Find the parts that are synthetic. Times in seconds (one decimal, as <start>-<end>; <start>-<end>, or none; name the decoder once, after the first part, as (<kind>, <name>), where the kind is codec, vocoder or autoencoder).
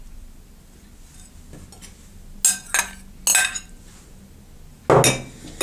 none